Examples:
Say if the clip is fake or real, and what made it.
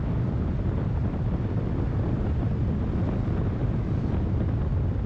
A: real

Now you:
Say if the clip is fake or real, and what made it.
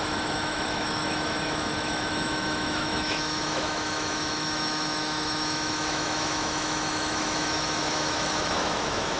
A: fake, autoencoder, DAC-VAE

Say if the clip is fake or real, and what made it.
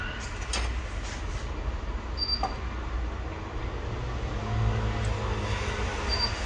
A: real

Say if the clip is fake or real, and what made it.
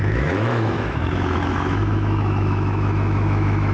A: fake, autoencoder, DAC-VAE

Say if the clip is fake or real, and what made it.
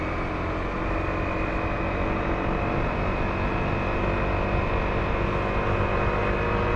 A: real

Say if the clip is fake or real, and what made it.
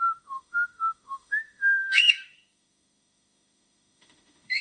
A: fake, autoencoder, DAC-VAE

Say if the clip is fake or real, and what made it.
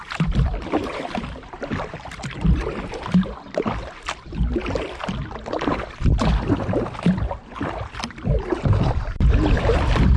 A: fake, vocoder, BigVGAN v2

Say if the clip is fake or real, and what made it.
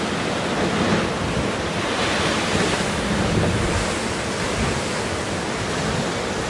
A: real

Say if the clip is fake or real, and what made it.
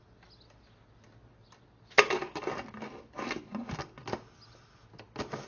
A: real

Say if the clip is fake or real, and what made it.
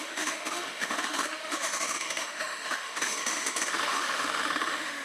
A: fake, autoencoder, DAC-VAE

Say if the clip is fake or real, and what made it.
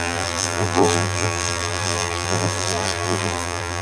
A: fake, vocoder, BigVGAN v2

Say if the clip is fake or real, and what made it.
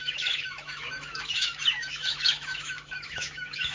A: fake, autoencoder, DAC-VAE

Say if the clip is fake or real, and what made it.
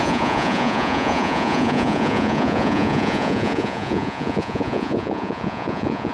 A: fake, vocoder, Vocos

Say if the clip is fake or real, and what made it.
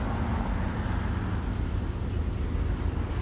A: real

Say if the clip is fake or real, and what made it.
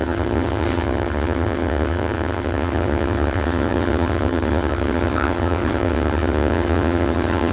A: fake, vocoder, HiFi-GAN